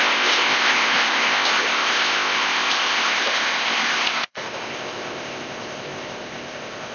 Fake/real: fake